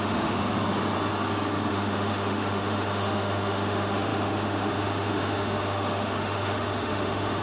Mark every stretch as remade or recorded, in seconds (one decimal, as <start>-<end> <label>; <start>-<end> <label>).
0.0-0.4 remade; 0.4-1.7 recorded; 1.7-7.4 remade